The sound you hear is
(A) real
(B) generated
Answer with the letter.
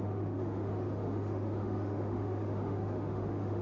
B